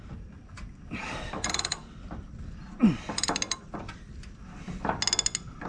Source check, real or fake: real